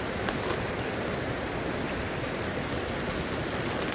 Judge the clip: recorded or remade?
recorded